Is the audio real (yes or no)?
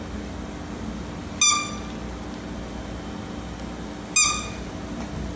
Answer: yes